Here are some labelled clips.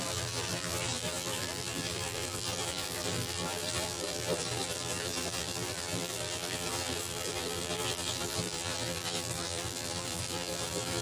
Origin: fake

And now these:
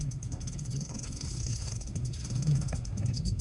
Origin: fake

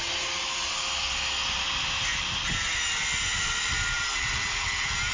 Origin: real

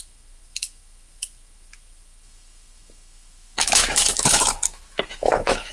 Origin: fake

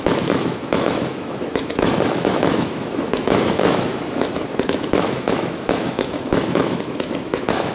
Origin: fake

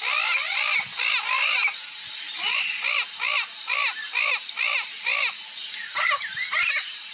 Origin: real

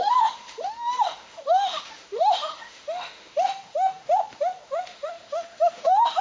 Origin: fake